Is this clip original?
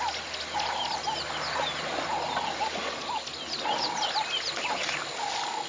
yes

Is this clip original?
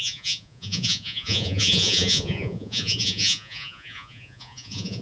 no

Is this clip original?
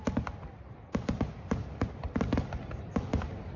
yes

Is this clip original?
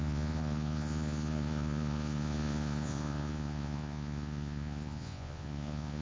no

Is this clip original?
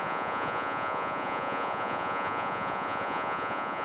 no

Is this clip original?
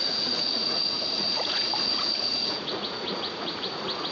no